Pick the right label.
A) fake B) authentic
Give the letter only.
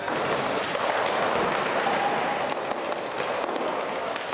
B